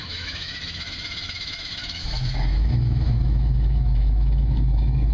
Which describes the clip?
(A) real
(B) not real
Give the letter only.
B